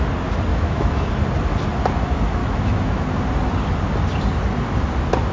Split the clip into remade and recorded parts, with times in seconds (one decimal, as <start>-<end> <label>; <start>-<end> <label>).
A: 0.0-0.5 recorded; 0.5-1.1 remade; 1.1-2.4 recorded; 2.4-3.1 remade; 3.1-5.3 recorded